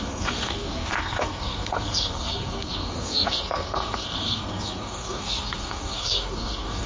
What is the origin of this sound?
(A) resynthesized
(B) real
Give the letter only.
A